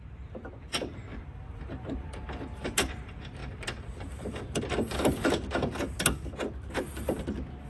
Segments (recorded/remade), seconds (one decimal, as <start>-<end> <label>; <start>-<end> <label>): 0.0-1.1 recorded; 1.1-2.9 remade; 2.9-3.4 recorded; 3.4-4.6 remade; 4.6-7.7 recorded